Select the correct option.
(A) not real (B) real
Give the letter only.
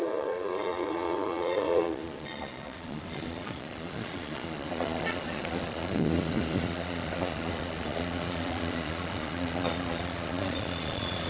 A